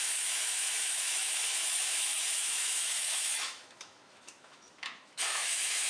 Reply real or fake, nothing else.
fake